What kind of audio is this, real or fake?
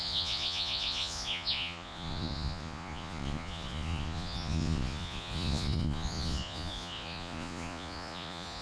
fake